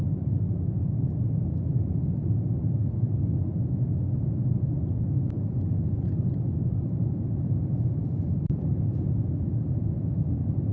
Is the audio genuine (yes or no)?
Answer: yes